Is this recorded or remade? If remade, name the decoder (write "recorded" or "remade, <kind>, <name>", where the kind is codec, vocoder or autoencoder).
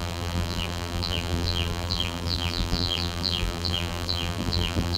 remade, vocoder, BigVGAN v2